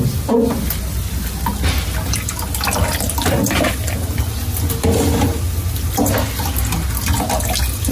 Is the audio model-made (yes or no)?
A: no